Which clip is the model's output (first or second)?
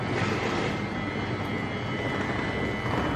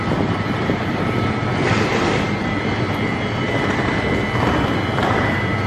second